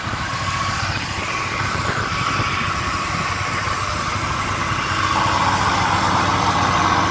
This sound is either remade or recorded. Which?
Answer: recorded